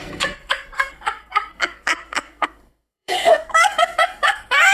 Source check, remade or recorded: remade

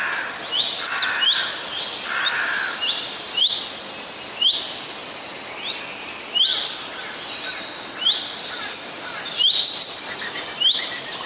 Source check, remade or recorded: recorded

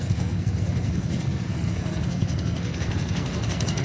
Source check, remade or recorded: remade